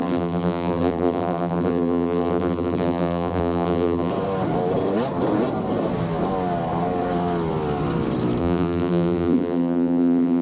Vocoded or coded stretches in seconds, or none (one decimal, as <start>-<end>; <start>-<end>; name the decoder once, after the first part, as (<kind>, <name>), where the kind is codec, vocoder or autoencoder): 0.0-4.1 (vocoder, BigVGAN v2); 8.4-10.4